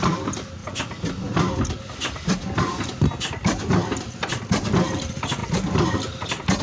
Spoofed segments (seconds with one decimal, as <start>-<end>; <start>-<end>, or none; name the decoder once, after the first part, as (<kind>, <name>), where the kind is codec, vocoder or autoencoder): 0.0-6.6 (vocoder, BigVGAN v2)

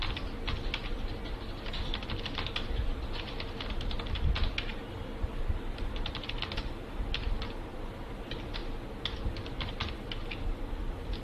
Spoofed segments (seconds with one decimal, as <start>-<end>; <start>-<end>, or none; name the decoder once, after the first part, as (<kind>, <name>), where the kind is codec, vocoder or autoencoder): none

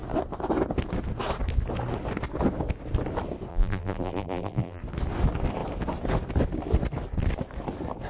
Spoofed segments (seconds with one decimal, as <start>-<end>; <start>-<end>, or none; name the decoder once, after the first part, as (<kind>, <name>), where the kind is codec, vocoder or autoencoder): 3.5-4.8 (vocoder, BigVGAN v2)

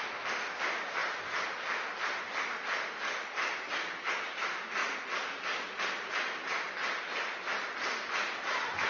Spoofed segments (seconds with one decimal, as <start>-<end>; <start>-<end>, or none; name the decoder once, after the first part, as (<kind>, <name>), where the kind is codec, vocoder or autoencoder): 7.5-8.0 (vocoder, BigVGAN v2)